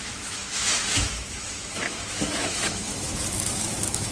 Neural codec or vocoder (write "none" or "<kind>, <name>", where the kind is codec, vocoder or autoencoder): autoencoder, DAC-VAE